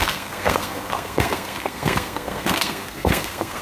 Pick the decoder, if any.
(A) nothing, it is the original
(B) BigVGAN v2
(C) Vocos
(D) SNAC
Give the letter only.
D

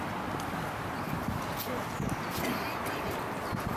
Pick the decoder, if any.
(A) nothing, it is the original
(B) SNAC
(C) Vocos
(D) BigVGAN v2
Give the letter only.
A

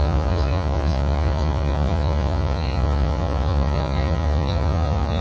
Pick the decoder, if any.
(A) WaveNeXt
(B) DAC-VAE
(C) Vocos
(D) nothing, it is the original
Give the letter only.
C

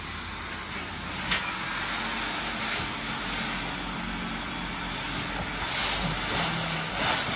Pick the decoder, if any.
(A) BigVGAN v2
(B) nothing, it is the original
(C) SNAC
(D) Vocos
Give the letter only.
B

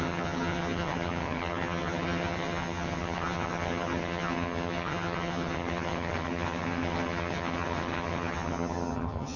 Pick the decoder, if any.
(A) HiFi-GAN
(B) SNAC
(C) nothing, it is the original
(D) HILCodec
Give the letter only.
A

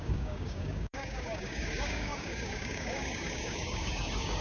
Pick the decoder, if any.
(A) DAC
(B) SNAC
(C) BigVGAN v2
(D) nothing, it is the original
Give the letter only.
A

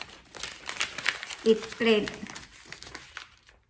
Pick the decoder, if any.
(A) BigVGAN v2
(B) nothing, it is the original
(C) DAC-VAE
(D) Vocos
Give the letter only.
B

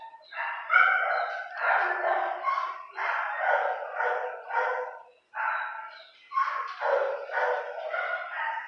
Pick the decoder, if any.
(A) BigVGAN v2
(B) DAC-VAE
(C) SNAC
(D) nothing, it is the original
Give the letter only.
D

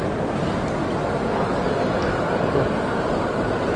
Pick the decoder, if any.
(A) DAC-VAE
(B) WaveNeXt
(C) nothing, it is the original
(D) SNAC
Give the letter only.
C